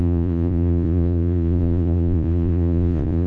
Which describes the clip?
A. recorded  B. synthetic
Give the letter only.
B